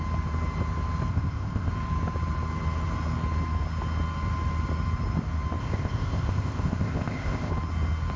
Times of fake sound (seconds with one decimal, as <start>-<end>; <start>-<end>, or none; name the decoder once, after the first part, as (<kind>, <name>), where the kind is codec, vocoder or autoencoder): 1.1-1.7 (codec, ZipCodec); 5.6-7.5

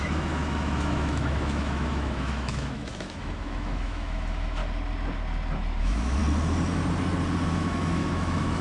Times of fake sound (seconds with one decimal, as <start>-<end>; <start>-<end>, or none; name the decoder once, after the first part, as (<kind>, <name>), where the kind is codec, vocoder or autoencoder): 0.0-4.6 (autoencoder, DAC-VAE); 5.8-6.2; 7.5-8.6

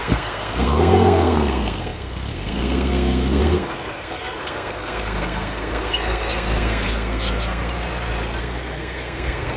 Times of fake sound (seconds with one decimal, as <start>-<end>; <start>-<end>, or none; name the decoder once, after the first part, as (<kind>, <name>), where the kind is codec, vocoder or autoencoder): 0.0-7.7 (codec, SNAC); 8.4-9.6